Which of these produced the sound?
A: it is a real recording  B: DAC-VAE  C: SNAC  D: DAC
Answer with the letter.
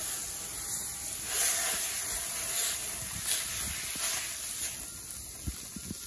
A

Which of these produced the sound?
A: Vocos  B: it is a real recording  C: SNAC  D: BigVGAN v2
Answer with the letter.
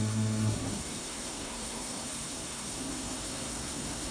C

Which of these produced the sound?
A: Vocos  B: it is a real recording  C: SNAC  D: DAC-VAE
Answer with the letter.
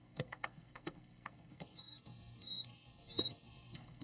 C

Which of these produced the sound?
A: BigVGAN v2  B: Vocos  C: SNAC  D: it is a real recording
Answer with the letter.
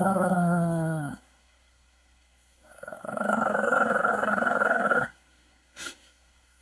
C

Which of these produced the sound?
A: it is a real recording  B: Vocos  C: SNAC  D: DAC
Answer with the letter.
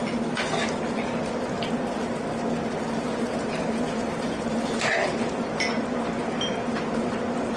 A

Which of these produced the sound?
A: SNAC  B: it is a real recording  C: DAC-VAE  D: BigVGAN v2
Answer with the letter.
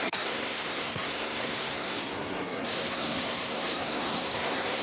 A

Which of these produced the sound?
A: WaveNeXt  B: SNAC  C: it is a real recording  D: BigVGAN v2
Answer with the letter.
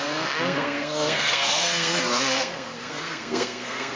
B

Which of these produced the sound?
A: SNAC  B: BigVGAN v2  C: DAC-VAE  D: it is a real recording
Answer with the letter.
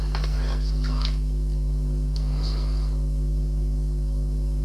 A